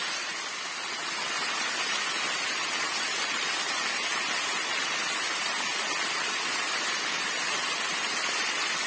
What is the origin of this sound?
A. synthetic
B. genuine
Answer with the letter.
B